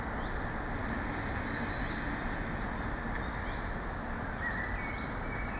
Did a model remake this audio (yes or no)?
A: no